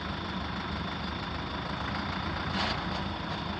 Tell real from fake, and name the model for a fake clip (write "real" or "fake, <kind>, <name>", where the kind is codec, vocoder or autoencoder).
real